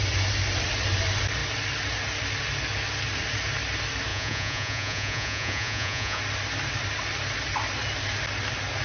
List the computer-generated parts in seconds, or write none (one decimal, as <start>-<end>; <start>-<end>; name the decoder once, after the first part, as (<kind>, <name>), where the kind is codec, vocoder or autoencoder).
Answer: 4.1-6.2 (vocoder, Vocos)